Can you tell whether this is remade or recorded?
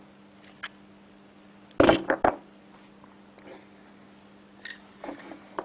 recorded